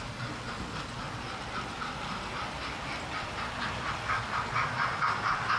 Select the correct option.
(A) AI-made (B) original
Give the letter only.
B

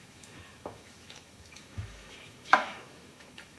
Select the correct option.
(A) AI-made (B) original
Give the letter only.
A